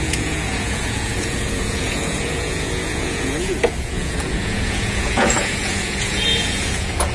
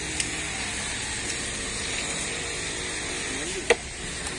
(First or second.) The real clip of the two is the second